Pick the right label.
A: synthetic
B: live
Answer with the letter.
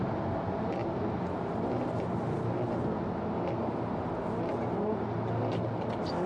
B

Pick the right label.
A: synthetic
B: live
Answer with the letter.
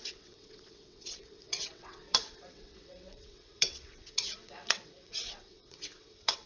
A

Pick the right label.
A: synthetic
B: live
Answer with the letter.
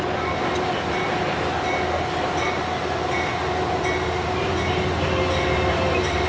B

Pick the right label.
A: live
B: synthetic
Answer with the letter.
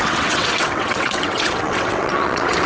B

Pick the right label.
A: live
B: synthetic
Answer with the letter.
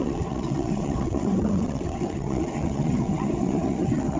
B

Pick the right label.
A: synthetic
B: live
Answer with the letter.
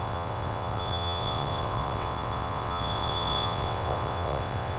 A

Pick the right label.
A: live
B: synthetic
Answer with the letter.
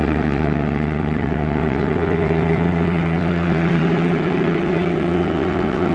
B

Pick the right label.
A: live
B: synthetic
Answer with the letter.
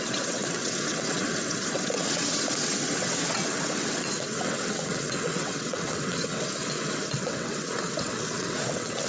B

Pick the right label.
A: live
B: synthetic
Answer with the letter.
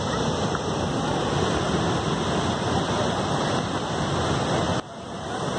A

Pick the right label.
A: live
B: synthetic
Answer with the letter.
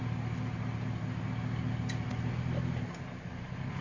A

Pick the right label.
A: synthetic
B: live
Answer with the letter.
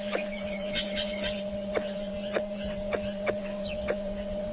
A